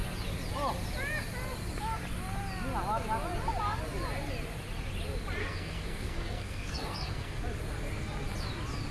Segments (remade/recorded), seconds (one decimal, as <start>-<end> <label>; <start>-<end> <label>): 0.0-5.4 recorded; 5.4-7.4 remade; 7.4-8.9 recorded